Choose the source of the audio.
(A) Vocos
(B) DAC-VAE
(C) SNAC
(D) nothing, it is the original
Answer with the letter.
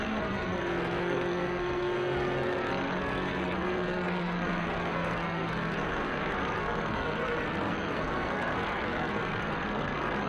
C